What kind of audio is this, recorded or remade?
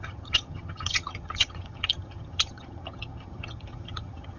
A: remade